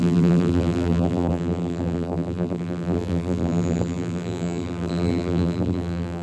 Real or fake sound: fake